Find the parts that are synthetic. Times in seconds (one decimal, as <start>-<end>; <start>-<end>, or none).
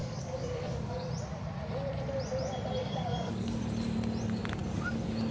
0.0-1.1; 2.8-3.6